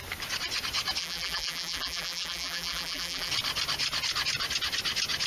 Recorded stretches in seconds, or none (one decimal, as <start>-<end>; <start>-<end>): 0.0-1.0; 3.3-5.3